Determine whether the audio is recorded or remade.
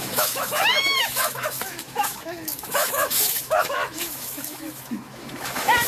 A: remade